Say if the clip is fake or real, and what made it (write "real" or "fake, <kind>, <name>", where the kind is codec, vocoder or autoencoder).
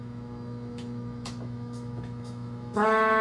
fake, autoencoder, DAC-VAE